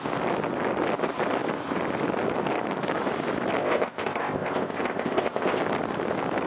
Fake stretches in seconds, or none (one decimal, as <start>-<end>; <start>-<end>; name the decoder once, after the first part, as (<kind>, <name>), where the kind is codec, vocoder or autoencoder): 3.6-5.6 (codec, ZipCodec)